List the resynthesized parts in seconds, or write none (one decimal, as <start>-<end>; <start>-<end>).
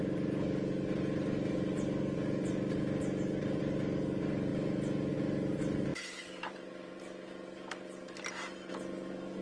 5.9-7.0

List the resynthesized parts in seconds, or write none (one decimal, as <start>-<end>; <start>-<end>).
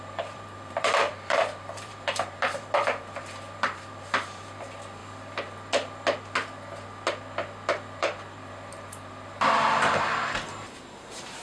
0.0-5.0; 8.0-11.4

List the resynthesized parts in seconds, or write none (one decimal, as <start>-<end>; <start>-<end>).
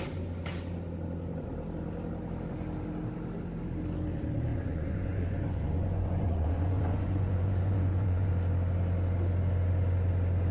4.5-8.3